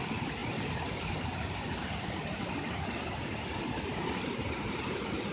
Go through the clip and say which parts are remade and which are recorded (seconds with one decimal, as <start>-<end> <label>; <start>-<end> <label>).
0.0-5.3 recorded